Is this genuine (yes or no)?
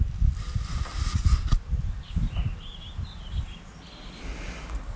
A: yes